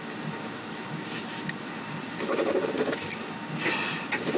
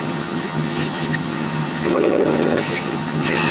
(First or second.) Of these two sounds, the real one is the first